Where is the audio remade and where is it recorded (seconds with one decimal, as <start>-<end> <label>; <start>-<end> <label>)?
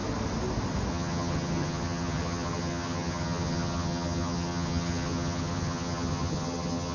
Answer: 0.0-0.9 recorded; 0.9-6.9 remade